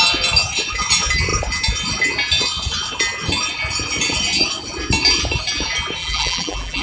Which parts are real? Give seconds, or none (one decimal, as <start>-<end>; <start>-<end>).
0.0-6.0

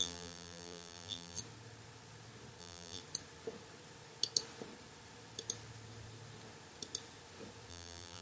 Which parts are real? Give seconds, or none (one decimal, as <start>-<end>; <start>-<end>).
1.4-2.6; 3.0-7.7

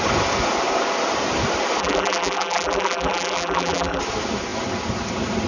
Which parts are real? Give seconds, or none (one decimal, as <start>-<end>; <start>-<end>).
0.0-1.8; 4.0-5.5

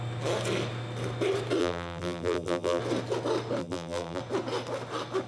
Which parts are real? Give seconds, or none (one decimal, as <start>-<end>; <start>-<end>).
0.0-1.6; 2.8-3.6; 4.2-5.3

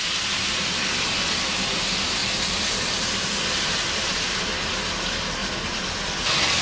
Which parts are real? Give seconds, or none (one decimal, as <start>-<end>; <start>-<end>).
0.0-2.2; 4.8-5.4; 6.1-6.6

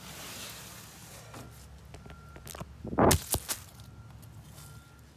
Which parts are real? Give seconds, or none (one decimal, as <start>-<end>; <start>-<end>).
0.0-5.2

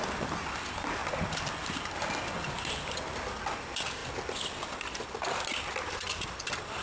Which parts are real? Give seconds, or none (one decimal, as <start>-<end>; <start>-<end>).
1.0-2.3; 4.0-5.9

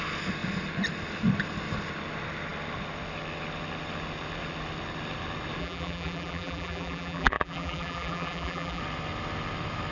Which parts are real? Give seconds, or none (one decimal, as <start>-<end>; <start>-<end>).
0.0-5.6; 8.8-9.9